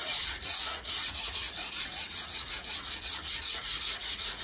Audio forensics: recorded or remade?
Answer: remade